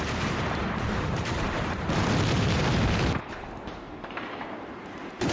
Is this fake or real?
fake